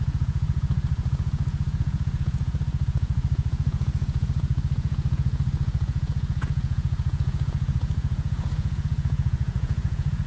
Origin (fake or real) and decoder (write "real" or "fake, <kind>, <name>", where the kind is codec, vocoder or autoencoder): fake, vocoder, Vocos